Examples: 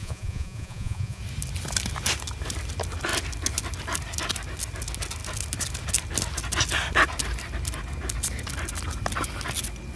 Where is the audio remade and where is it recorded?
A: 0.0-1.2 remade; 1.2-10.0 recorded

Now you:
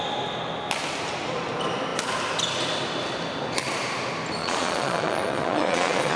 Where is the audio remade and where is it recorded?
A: 0.0-4.4 recorded; 4.4-6.2 remade

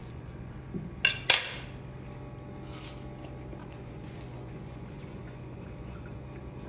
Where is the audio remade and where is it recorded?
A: 0.0-0.6 remade; 0.6-3.6 recorded; 3.6-6.2 remade; 6.2-6.7 recorded

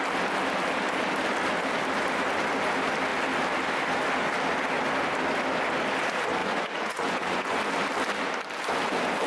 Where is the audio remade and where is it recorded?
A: 0.0-6.4 recorded; 6.4-7.6 remade; 7.6-9.3 recorded

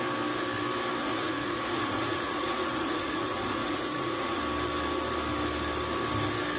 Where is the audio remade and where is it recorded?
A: 0.0-1.0 recorded; 1.0-4.4 remade; 4.4-6.6 recorded

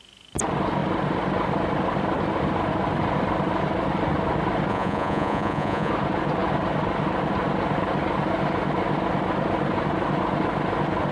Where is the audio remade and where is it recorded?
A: 0.0-4.7 recorded; 4.7-5.9 remade; 5.9-11.1 recorded